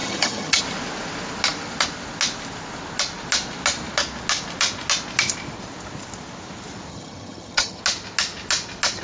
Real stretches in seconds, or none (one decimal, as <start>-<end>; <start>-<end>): 0.6-6.9; 7.8-9.0